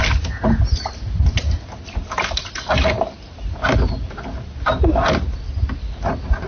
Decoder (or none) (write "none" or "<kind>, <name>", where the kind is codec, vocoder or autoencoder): none